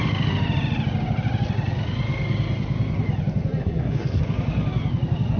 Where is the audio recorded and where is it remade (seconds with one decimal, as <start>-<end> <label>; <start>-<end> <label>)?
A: 0.0-3.6 recorded; 3.6-4.2 remade; 4.2-5.4 recorded